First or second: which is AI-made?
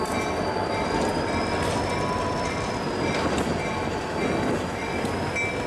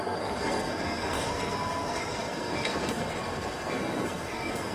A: second